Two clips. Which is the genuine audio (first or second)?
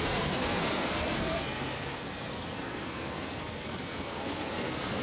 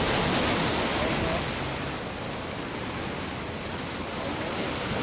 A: second